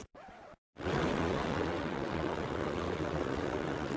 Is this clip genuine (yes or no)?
no